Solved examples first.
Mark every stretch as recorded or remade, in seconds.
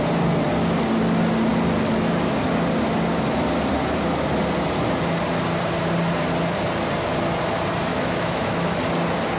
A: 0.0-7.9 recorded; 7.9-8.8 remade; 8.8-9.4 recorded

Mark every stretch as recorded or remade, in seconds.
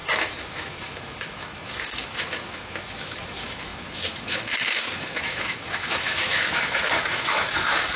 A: 0.0-8.0 remade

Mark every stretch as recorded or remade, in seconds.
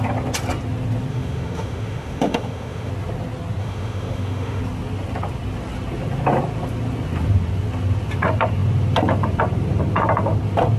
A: 0.0-1.1 recorded; 1.1-2.9 remade; 2.9-3.6 recorded; 3.6-4.6 remade; 4.6-10.8 recorded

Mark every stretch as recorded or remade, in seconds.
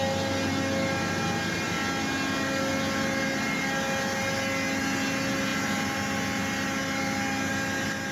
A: 0.0-8.1 recorded